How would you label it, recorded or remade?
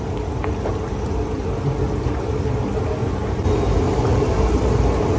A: recorded